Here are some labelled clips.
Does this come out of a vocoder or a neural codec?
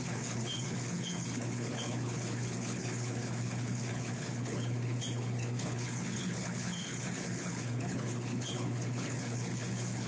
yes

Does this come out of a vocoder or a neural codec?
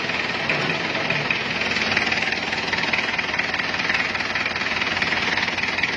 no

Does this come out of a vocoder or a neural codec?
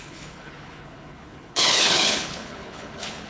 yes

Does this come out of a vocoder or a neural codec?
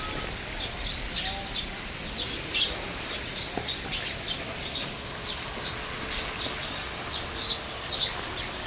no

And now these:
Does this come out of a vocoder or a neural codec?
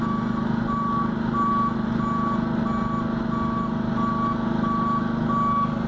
no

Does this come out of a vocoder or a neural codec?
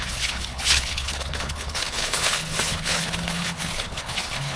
yes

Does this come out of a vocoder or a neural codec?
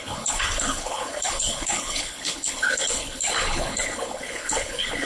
yes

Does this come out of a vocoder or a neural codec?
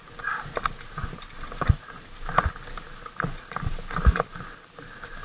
no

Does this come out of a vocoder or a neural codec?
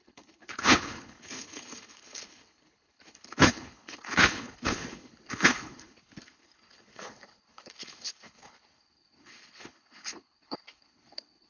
yes